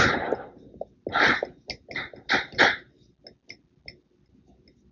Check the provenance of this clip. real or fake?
real